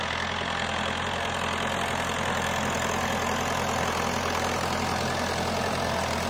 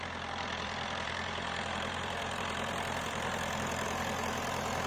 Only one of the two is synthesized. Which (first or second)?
second